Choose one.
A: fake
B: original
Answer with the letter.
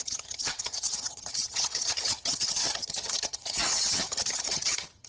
A